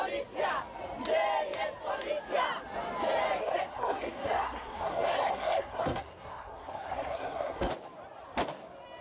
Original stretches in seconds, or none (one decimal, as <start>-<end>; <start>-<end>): 0.0-3.4; 7.7-9.0